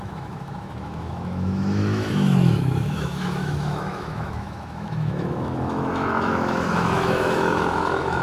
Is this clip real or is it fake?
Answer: fake